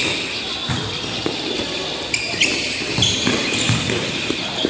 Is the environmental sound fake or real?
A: real